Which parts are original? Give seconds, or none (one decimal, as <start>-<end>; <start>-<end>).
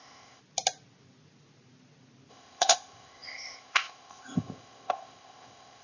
0.4-2.3